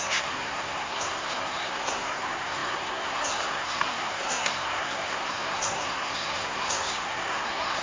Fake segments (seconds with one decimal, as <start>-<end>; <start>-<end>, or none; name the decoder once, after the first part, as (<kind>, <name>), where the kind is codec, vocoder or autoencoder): 0.0-7.8 (codec, SNAC)